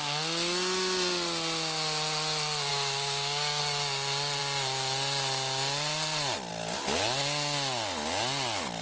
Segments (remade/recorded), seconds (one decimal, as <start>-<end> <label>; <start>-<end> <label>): 0.0-2.7 recorded; 2.7-3.6 remade; 3.6-8.8 recorded